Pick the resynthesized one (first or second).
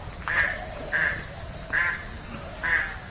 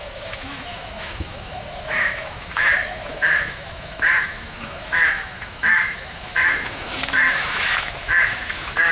second